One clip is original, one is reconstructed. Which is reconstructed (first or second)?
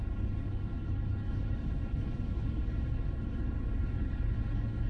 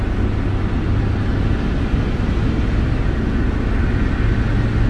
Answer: first